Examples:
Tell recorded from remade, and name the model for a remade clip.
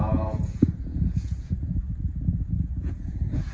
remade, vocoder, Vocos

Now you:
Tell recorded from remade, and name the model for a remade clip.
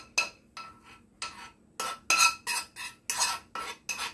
recorded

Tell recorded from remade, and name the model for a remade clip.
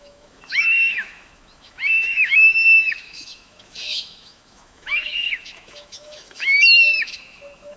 remade, autoencoder, DAC-VAE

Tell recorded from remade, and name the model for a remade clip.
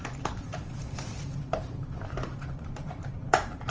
remade, vocoder, BigVGAN v2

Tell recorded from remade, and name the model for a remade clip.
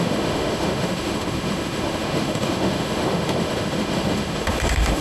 remade, autoencoder, DAC-VAE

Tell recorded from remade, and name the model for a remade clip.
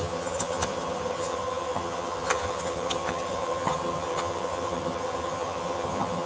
remade, vocoder, HiFi-GAN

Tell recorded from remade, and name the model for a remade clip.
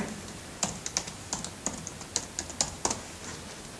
recorded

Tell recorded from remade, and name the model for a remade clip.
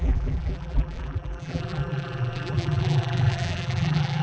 remade, vocoder, BigVGAN v2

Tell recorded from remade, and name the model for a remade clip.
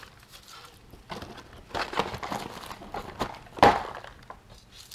recorded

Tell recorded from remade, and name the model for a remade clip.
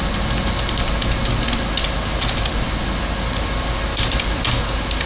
recorded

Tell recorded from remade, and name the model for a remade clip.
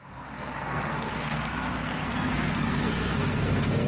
remade, codec, SNAC